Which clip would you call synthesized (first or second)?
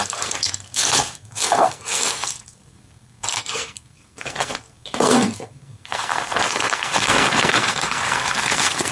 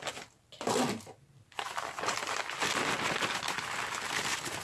first